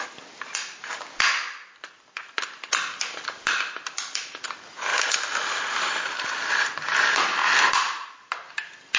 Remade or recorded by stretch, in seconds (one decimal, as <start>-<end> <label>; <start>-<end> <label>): 0.0-9.0 recorded